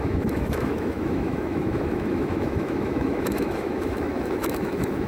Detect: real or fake fake